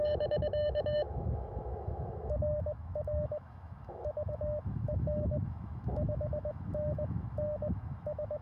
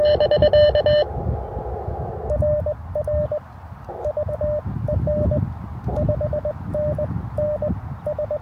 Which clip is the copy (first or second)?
first